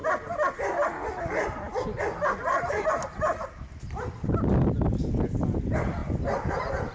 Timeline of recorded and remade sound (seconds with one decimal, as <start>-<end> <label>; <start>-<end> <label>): 0.0-6.9 recorded